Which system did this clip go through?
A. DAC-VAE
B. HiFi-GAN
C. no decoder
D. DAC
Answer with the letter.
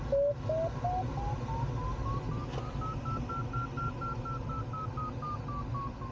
C